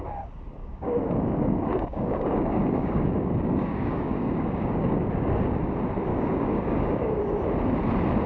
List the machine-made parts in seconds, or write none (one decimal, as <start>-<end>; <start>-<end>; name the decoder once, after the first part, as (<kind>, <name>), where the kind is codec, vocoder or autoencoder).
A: 0.6-5.3 (codec, DAC); 6.1-7.2